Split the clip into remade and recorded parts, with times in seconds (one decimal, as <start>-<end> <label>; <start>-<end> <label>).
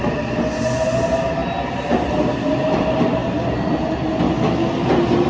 0.0-5.3 recorded